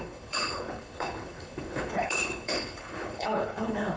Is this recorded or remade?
remade